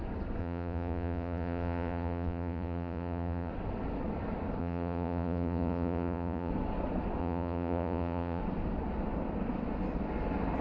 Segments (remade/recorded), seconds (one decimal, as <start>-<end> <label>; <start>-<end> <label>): 0.0-0.4 recorded; 0.4-3.5 remade; 3.5-4.6 recorded; 4.6-6.5 remade; 6.5-7.2 recorded; 7.2-8.4 remade; 8.4-10.6 recorded